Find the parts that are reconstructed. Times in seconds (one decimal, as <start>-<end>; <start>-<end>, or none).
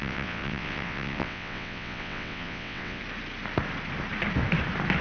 0.0-3.0